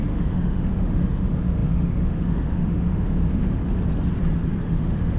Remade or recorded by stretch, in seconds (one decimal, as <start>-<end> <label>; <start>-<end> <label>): 0.0-3.6 remade; 3.6-4.6 recorded; 4.6-5.2 remade